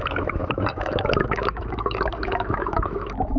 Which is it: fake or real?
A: fake